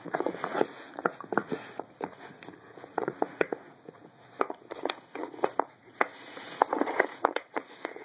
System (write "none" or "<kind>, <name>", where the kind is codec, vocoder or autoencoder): vocoder, Vocos